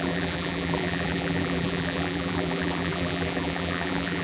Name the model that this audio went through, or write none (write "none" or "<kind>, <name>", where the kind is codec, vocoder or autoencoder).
vocoder, BigVGAN v2